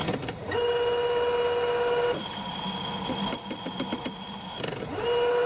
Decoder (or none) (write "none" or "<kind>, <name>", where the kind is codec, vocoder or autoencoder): none